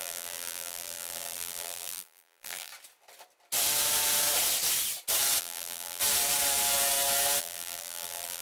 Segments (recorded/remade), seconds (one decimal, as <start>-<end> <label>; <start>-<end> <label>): 0.0-2.7 remade; 2.7-5.4 recorded; 5.4-6.0 remade; 6.0-7.4 recorded; 7.4-8.4 remade